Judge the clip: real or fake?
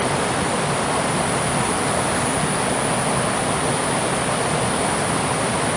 real